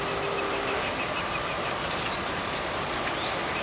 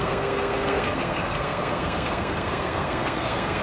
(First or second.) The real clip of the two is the first